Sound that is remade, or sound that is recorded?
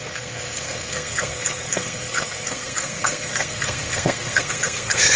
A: remade